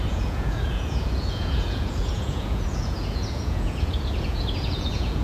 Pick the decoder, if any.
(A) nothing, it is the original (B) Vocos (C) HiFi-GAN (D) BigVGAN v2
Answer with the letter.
B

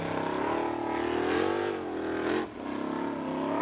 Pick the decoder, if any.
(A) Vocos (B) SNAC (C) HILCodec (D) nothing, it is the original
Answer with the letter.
D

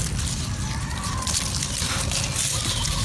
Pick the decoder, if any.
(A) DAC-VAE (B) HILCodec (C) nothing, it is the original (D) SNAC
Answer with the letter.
C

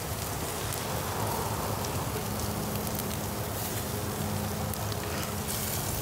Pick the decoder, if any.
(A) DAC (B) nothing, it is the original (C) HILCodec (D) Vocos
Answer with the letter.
B